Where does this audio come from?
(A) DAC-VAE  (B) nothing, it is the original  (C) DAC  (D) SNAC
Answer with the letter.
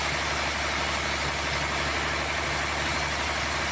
B